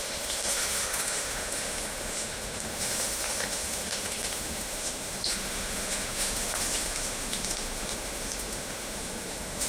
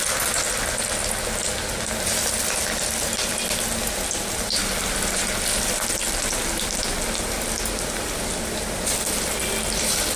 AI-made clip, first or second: first